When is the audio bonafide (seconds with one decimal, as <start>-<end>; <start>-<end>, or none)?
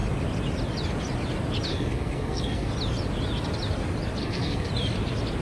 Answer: 0.0-1.7; 2.7-4.2; 4.7-5.4